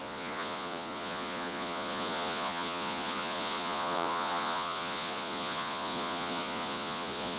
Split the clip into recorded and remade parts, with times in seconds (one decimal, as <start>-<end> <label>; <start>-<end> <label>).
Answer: 0.0-7.4 remade